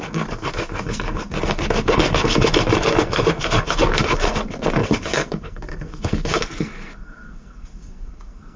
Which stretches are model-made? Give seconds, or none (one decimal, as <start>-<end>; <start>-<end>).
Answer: 0.0-8.6